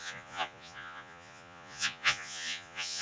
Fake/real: fake